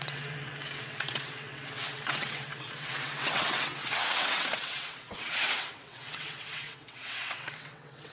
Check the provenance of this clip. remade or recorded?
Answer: remade